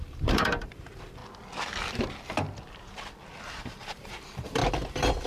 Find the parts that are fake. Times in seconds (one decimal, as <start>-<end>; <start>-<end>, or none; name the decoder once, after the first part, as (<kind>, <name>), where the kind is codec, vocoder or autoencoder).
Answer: 0.0-1.2 (vocoder, BigVGAN v2); 3.6-4.6